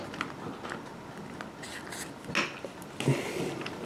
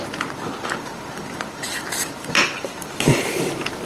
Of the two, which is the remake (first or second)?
second